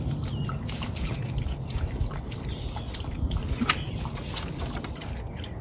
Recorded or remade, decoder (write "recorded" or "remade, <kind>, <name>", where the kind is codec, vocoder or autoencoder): recorded